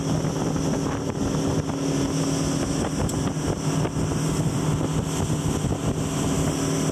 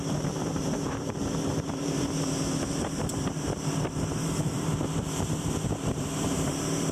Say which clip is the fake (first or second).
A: second